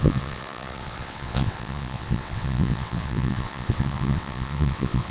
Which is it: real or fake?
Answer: fake